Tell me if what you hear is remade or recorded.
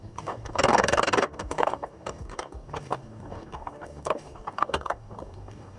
remade